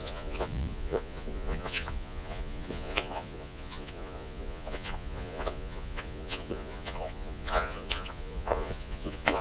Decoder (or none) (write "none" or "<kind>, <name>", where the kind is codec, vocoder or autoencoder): vocoder, Vocos